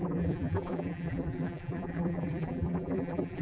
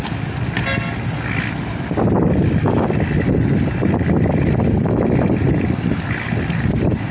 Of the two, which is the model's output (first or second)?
first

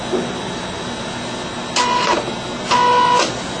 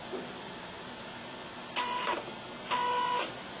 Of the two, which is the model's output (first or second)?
second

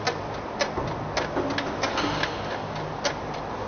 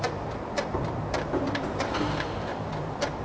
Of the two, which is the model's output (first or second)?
second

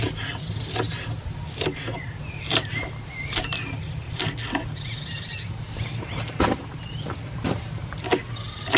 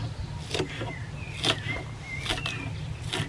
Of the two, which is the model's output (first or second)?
first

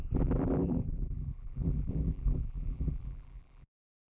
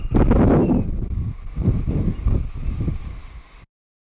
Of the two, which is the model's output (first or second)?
first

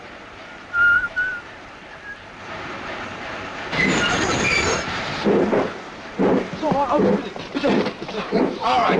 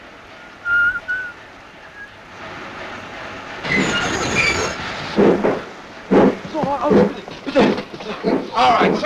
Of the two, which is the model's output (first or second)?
first